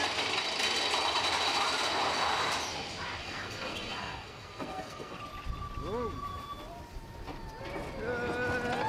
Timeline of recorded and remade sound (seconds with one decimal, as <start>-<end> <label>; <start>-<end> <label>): 0.0-3.2 recorded; 3.2-5.2 remade; 5.2-8.9 recorded